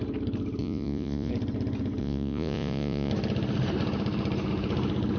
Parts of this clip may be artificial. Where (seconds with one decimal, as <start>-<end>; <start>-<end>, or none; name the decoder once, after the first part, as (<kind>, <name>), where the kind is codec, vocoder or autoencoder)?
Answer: 0.6-1.3 (vocoder, Vocos); 2.0-3.1

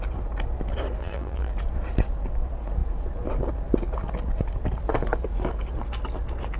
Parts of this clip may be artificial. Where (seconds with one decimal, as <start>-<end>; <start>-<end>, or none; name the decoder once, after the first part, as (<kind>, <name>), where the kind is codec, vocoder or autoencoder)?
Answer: 1.0-1.5 (vocoder, BigVGAN v2)

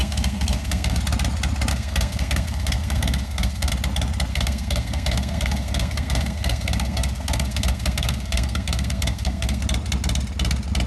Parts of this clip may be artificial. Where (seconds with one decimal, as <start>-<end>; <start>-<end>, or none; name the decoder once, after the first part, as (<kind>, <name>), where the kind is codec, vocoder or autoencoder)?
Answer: 0.0-1.0 (codec, SNAC); 1.7-3.7; 4.3-9.6